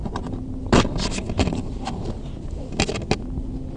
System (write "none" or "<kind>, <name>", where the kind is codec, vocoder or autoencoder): none